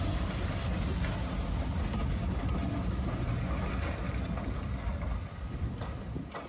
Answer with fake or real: real